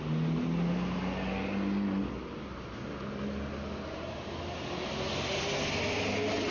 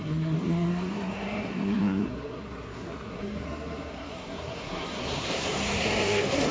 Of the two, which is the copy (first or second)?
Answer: second